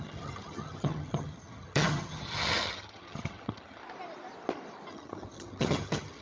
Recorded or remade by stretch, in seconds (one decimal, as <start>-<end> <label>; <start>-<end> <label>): 0.0-3.8 remade; 3.8-4.9 recorded; 4.9-6.2 remade